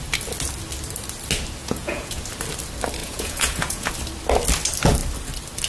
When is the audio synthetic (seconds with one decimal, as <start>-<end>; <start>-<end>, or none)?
1.6-2.2; 3.0-3.9